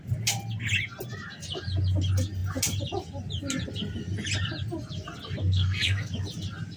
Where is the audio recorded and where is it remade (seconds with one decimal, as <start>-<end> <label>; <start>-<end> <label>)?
0.0-5.4 recorded; 5.4-6.1 remade; 6.1-6.8 recorded